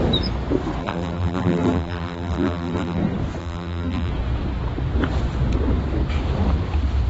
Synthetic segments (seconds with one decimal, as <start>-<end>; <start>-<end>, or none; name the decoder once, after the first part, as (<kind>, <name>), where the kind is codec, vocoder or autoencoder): 0.8-3.0 (vocoder, BigVGAN v2); 3.4-4.1